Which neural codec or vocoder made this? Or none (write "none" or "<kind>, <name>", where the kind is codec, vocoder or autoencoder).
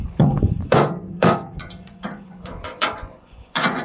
vocoder, Vocos